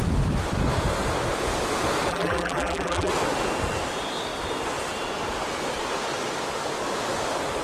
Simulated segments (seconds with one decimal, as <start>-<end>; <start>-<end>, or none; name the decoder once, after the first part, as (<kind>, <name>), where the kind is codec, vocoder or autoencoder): 2.1-3.1 (vocoder, BigVGAN v2)